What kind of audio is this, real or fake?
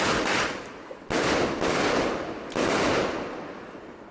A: real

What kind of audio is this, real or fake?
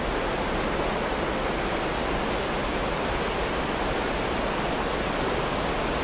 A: real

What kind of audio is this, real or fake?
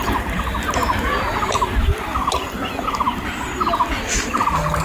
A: real